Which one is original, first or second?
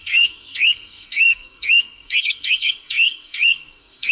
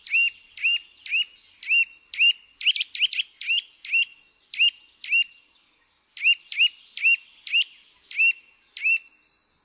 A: second